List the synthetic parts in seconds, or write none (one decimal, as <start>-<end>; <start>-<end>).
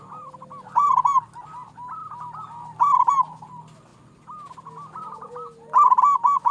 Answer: none